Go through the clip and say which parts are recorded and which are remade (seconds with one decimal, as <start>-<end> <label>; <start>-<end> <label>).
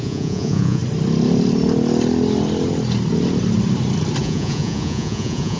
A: 0.0-0.8 remade; 0.8-4.2 recorded; 4.2-5.6 remade